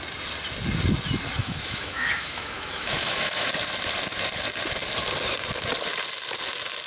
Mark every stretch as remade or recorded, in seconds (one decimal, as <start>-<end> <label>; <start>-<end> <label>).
0.0-1.4 recorded; 1.4-3.5 remade; 3.5-6.9 recorded